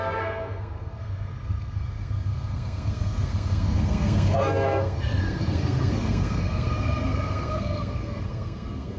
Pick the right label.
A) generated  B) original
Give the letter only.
A